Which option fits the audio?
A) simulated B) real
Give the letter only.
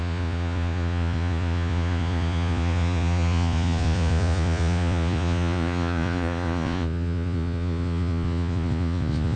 A